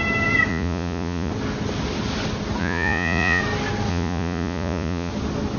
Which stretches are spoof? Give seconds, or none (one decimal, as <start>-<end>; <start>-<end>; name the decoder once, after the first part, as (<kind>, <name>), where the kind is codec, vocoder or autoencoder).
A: 0.5-1.3 (vocoder, Vocos); 2.6-3.4; 3.9-5.1

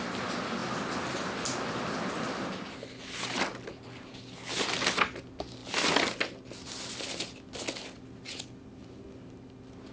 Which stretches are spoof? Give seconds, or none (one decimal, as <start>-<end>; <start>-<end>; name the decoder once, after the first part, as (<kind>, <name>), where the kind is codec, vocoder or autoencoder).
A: none

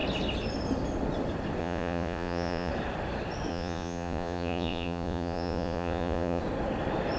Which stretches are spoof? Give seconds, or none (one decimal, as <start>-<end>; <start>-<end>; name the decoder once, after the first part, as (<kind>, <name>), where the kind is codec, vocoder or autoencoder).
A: 1.6-2.7 (vocoder, Vocos); 3.5-6.4

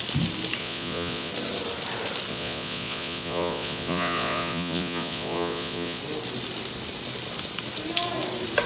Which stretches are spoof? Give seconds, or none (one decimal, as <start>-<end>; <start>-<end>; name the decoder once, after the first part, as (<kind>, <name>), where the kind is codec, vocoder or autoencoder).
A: 0.6-1.3 (vocoder, Vocos); 2.3-6.0